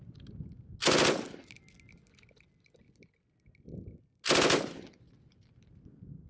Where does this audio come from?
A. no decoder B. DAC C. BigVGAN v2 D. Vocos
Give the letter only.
A